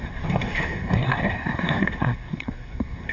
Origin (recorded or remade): remade